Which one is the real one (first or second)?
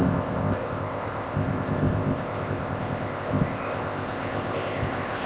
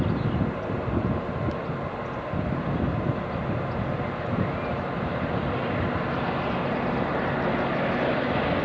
second